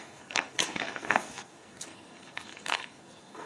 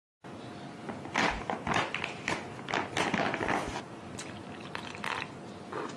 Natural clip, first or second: second